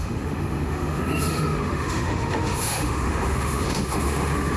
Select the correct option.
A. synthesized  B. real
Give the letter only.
A